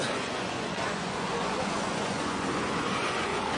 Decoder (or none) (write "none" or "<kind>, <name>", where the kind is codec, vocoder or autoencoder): vocoder, Vocos